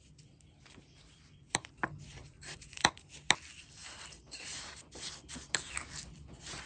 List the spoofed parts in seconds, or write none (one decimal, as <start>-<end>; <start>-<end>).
2.2-3.0; 3.8-5.1